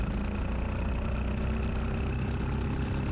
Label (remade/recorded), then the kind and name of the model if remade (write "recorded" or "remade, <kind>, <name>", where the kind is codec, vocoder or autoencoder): recorded